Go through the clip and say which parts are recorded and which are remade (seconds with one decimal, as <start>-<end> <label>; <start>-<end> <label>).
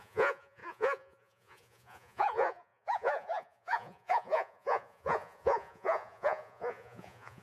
0.0-7.4 remade